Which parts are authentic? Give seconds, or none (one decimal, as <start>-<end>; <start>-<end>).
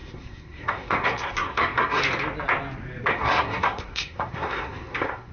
2.0-3.1